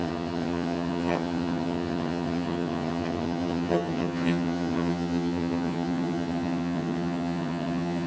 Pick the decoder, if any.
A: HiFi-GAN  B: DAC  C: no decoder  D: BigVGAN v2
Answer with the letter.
A